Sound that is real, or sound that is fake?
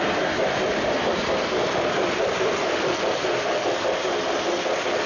real